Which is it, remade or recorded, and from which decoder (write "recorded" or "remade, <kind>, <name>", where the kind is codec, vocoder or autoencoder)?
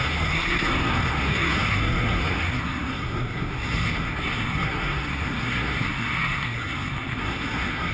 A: remade, codec, SNAC